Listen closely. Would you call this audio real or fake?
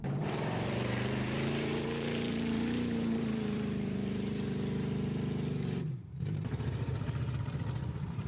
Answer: fake